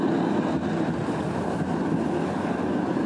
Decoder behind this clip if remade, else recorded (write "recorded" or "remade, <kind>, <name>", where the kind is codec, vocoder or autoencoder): recorded